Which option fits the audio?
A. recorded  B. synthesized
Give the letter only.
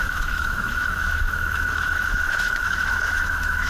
B